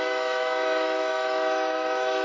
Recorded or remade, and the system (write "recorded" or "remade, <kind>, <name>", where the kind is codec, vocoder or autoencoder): remade, autoencoder, DAC-VAE